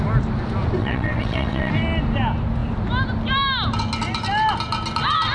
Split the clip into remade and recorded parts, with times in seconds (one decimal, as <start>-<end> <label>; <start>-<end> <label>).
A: 0.0-0.8 recorded; 0.8-1.7 remade; 1.7-5.3 recorded